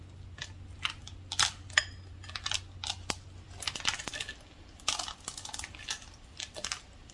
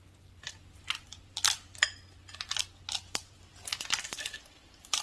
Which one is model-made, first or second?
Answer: second